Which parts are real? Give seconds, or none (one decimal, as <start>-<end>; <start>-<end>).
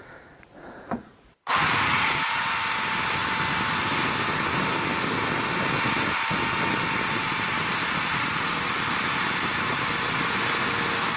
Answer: 2.4-7.8; 8.7-11.2